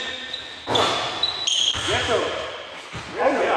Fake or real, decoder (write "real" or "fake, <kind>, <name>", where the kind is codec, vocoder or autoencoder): fake, vocoder, BigVGAN v2